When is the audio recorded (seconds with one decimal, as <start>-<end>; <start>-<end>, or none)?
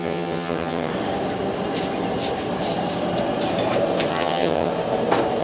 0.9-4.1; 4.7-5.4